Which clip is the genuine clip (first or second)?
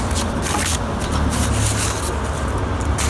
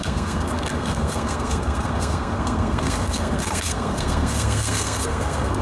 first